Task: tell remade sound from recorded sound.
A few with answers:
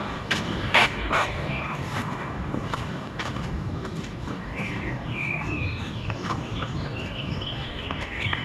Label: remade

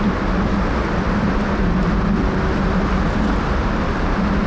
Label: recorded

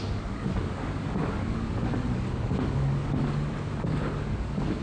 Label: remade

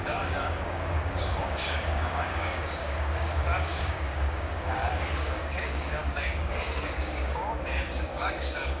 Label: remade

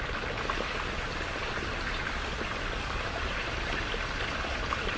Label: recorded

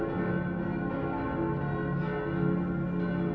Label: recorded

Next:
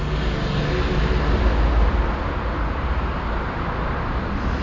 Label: recorded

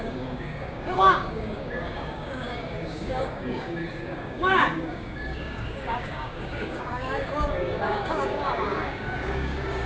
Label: remade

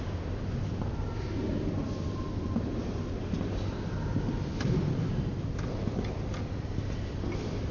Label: recorded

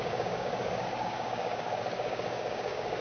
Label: remade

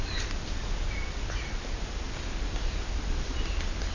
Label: recorded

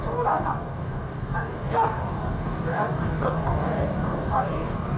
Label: remade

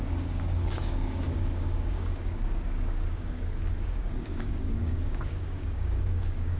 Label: remade